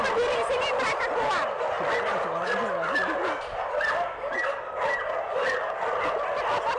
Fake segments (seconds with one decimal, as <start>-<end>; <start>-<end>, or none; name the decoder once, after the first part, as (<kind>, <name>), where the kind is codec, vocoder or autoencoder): none